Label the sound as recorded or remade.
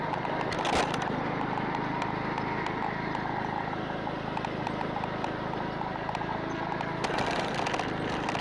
recorded